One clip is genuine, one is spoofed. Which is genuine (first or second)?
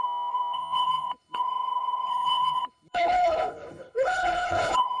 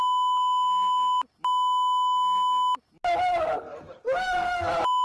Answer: second